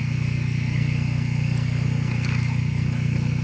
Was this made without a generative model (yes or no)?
no